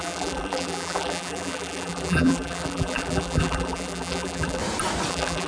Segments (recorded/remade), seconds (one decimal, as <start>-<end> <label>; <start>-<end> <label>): 0.0-4.6 remade; 4.6-5.1 recorded; 5.1-5.5 remade